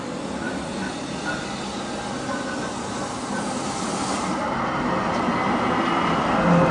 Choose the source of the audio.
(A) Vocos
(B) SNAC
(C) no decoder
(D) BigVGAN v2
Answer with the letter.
C